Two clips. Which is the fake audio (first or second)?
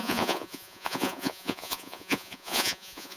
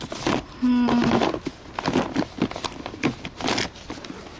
first